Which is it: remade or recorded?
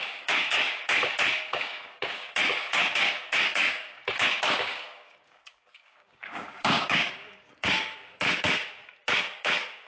remade